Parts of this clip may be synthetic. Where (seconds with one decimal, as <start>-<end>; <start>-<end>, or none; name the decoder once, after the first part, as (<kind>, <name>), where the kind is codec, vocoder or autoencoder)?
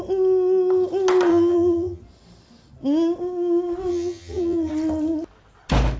1.3-2.0 (vocoder, HiFi-GAN); 3.9-4.7